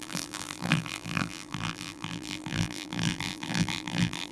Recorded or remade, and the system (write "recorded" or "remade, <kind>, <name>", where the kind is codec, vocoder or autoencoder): remade, vocoder, BigVGAN v2